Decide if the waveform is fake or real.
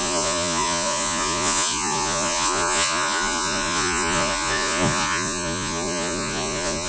fake